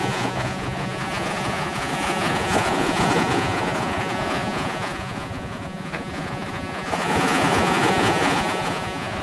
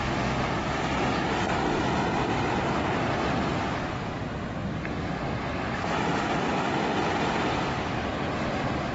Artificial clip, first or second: first